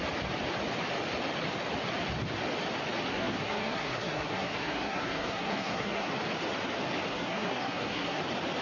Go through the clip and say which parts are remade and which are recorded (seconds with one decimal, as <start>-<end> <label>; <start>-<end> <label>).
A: 0.0-3.1 recorded; 3.1-6.1 remade; 6.1-7.1 recorded; 7.1-8.2 remade; 8.2-8.6 recorded